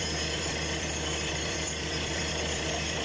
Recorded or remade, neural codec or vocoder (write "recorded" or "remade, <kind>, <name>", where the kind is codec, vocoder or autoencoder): remade, vocoder, BigVGAN v2